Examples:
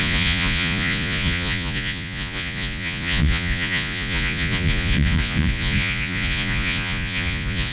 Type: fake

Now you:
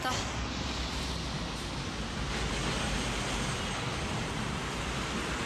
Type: real